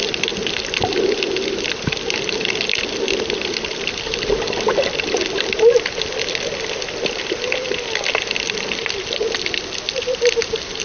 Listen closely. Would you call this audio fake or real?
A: real